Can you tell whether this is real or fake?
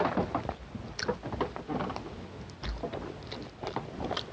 real